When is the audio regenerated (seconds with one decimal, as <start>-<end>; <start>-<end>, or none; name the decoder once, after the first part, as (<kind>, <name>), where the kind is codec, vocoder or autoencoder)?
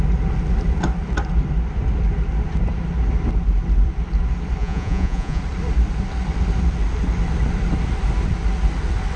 4.6-5.4 (vocoder, Vocos)